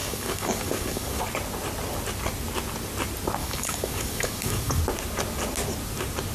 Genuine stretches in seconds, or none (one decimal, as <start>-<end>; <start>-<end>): 1.2-3.4; 4.8-6.3